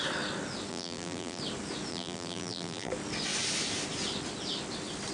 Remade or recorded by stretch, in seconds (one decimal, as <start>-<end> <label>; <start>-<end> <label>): 0.0-0.7 recorded; 0.7-1.4 remade; 1.4-1.9 recorded; 1.9-2.9 remade; 2.9-5.1 recorded